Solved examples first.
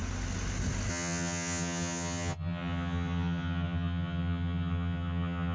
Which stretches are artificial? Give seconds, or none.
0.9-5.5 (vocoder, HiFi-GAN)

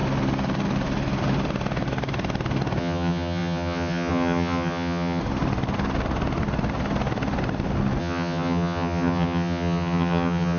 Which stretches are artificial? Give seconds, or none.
2.8-5.2 (vocoder, HiFi-GAN); 8.0-10.6

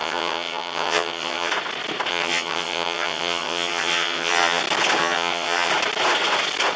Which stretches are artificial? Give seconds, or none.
0.0-1.5 (vocoder, HiFi-GAN); 2.1-4.6; 5.0-5.7

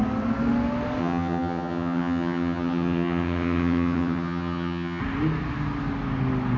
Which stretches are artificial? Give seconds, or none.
1.0-5.0 (vocoder, HiFi-GAN)